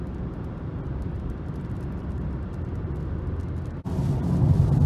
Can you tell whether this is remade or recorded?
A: recorded